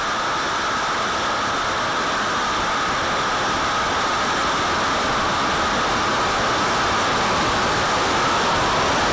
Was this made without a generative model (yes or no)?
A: yes